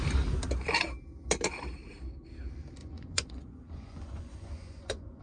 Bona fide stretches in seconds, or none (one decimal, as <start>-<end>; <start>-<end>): 0.0-2.8